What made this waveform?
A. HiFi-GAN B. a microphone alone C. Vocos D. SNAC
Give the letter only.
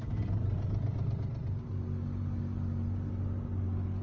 B